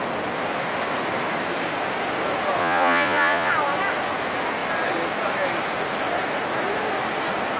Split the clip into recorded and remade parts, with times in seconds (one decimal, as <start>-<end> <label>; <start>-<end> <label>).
0.0-2.6 recorded; 2.6-3.5 remade; 3.5-7.6 recorded